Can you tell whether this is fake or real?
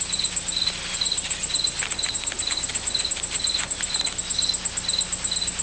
real